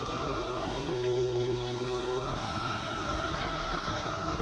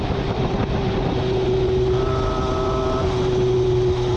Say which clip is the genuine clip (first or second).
second